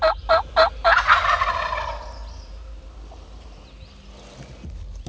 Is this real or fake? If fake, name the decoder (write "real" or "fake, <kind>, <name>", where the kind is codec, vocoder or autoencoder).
real